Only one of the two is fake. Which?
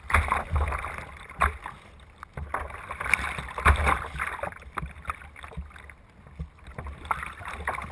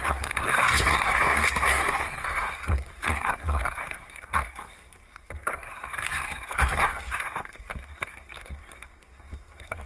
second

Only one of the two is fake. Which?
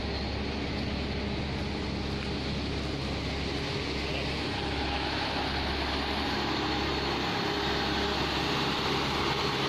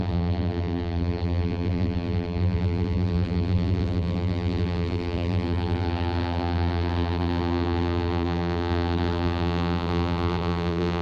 second